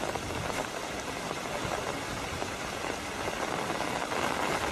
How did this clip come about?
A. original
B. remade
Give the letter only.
A